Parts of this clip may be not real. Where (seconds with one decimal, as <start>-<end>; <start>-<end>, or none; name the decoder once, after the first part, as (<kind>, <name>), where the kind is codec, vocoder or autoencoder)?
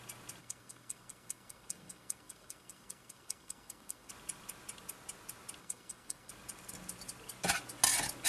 0.4-4.1 (codec, SNAC); 5.6-6.3